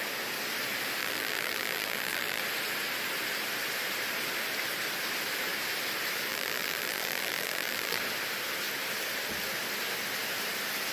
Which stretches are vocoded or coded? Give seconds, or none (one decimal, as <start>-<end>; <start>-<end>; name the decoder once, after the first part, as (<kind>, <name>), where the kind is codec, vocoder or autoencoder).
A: 1.0-2.4 (vocoder, BigVGAN v2); 6.3-8.0